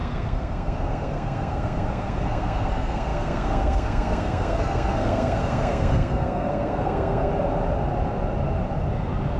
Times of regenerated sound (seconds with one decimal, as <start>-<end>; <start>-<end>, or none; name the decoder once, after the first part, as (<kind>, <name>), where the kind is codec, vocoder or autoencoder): 0.0-7.3 (codec, SNAC)